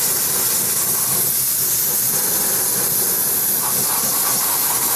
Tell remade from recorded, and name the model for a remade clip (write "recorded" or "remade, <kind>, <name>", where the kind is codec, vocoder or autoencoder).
recorded